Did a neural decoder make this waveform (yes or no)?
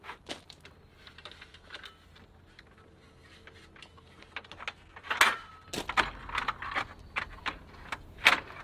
no